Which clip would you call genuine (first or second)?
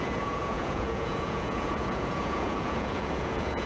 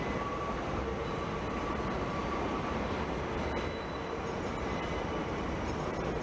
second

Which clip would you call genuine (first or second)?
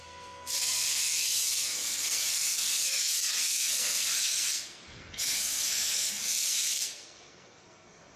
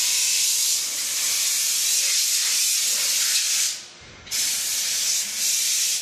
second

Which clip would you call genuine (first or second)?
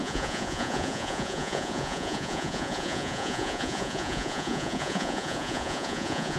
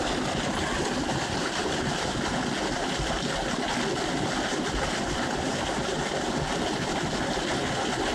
second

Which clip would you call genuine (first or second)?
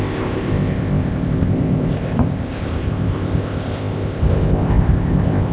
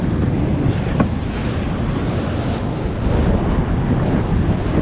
second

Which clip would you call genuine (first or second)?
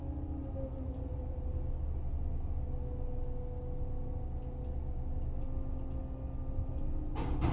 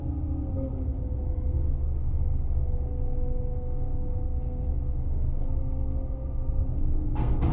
first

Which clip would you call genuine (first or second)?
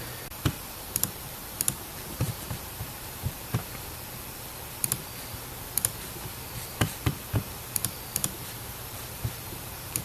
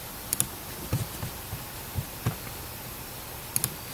second